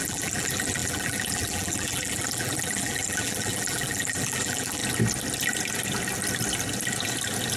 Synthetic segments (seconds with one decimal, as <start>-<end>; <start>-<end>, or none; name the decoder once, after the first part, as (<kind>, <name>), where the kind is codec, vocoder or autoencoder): 0.0-4.8 (vocoder, BigVGAN v2)

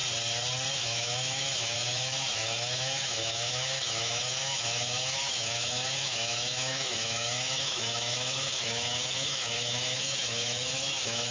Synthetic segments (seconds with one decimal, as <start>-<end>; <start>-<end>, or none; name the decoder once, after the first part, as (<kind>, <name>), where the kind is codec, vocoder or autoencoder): 0.7-11.3 (autoencoder, DAC-VAE)

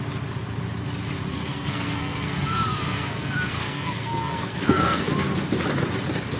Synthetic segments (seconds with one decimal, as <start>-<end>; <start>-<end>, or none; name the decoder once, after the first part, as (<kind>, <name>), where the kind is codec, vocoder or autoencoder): 1.3-5.1 (codec, SNAC)

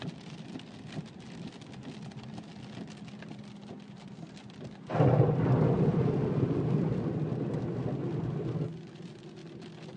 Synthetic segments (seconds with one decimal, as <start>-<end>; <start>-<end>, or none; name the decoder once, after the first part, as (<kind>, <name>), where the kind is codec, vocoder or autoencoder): none

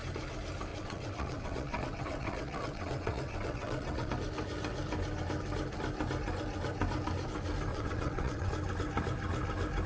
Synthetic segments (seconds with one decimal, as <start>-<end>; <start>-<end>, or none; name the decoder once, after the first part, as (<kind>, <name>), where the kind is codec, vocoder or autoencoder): 0.7-4.1 (vocoder, WaveNeXt); 7.7-8.5

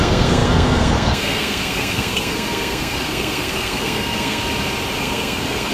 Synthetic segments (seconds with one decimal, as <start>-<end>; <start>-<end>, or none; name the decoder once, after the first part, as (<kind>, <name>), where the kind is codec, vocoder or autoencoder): 0.0-4.4 (codec, SNAC); 5.0-5.7

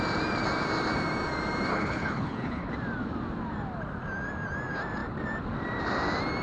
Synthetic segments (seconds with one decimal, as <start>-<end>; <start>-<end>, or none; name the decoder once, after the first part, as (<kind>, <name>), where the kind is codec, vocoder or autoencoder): 1.7-2.7 (codec, HILCodec)